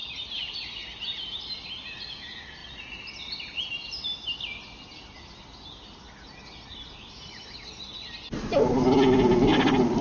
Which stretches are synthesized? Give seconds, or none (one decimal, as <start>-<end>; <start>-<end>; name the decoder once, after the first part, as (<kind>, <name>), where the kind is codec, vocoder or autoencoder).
6.7-7.4 (vocoder, BigVGAN v2)